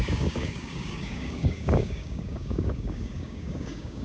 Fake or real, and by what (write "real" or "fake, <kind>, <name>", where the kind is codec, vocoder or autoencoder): fake, codec, DAC